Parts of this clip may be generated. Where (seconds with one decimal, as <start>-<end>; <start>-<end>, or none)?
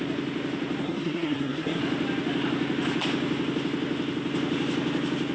0.8-1.8